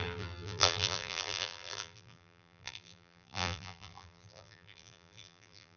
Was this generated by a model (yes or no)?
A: yes